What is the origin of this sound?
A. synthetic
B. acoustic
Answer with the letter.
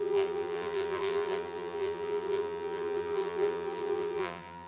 A